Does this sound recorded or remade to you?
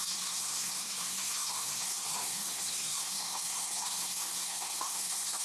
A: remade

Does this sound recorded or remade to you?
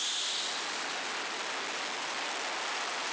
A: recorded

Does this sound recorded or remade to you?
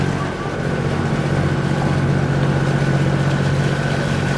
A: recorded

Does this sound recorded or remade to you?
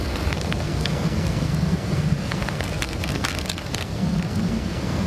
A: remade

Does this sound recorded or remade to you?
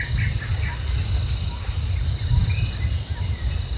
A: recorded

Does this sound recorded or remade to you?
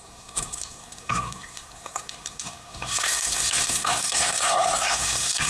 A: remade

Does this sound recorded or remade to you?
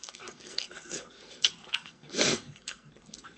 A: remade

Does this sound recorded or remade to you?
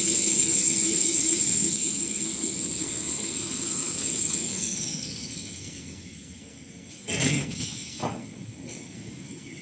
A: remade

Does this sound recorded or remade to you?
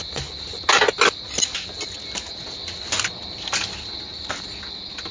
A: recorded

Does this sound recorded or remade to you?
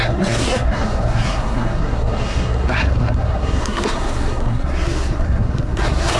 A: remade